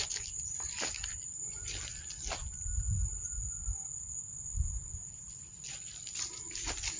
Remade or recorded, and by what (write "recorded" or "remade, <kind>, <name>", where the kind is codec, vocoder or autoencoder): recorded